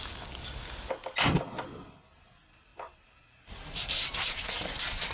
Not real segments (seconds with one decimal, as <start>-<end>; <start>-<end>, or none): 2.7-5.1